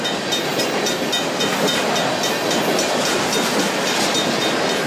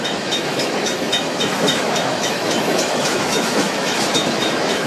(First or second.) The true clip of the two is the first